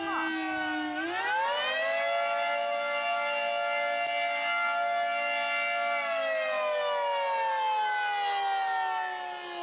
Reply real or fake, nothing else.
real